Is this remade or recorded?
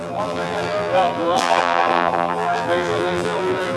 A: remade